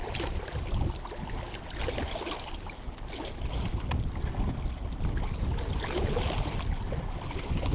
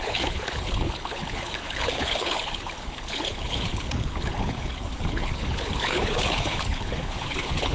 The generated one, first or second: second